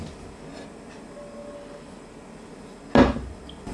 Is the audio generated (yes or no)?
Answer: no